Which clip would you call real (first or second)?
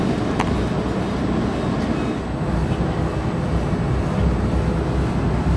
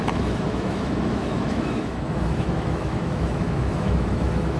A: first